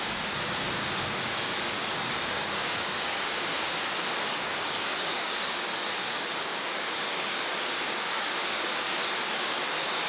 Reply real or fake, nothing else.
fake